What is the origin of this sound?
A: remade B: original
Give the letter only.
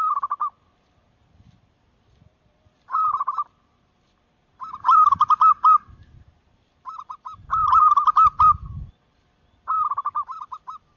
A